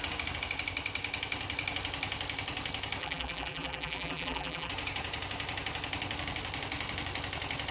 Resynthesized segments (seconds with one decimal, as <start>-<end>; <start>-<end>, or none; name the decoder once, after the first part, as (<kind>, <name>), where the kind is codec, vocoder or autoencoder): 3.0-4.7 (vocoder, BigVGAN v2)